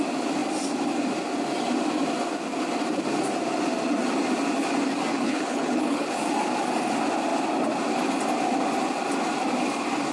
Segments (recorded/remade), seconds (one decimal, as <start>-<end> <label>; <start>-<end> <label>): 0.0-5.1 recorded; 5.1-6.1 remade; 6.1-10.1 recorded